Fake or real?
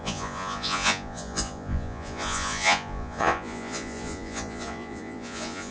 fake